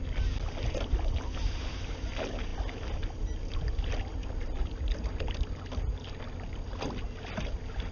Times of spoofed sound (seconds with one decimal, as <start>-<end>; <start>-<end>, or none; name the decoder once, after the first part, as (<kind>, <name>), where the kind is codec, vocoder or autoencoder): none